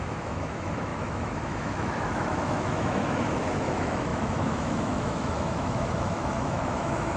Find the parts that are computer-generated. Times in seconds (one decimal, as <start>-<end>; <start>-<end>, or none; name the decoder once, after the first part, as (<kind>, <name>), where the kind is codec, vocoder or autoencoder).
0.0-7.2 (autoencoder, DAC-VAE)